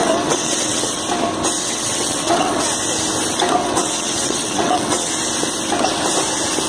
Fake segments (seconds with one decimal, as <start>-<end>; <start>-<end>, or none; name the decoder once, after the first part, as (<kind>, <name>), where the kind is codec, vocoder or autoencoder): 0.0-1.0 (vocoder, WaveNeXt); 1.6-2.6; 3.6-5.1